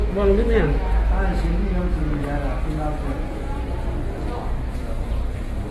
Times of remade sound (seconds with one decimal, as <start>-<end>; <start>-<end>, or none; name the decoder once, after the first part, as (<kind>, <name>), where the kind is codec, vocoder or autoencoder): 0.0-2.0 (autoencoder, DAC-VAE)